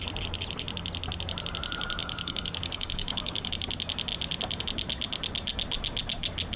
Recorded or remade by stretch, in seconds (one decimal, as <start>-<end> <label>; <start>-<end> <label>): 0.0-2.0 recorded; 2.0-3.5 remade; 3.5-6.6 recorded